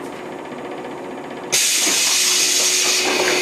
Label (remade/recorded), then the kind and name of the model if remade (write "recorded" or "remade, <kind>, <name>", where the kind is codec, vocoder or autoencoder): recorded